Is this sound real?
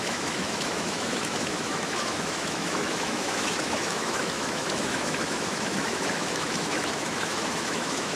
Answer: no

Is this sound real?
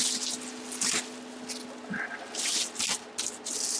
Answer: yes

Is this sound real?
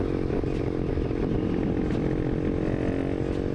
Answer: yes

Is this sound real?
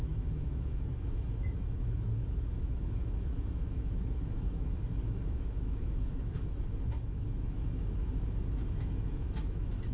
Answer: no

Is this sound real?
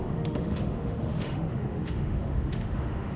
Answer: no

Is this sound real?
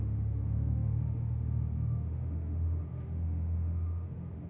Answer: no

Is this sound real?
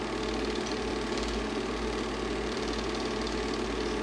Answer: yes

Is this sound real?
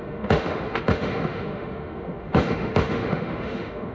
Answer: no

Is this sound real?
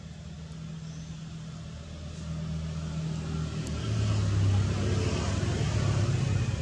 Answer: yes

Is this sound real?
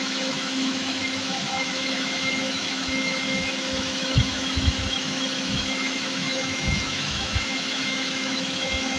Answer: no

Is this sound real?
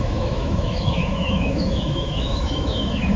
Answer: no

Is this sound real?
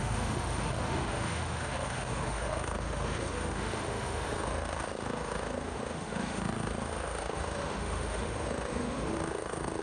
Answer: no